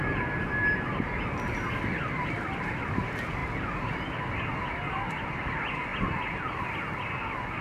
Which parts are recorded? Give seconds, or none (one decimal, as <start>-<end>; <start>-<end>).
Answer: 0.0-7.6